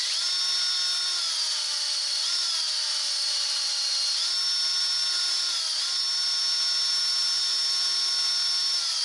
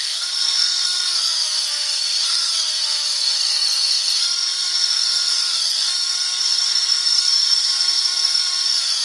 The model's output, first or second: second